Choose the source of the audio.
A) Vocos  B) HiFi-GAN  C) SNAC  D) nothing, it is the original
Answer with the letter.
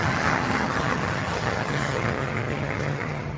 B